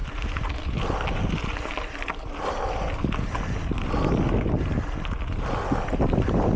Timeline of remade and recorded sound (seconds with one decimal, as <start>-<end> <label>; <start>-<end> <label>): 0.0-6.6 recorded